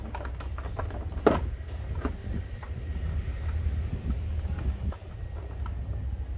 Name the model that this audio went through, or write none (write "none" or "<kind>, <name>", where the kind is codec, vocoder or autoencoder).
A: none